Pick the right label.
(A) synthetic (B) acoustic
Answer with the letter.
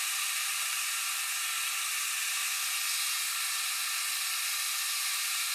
B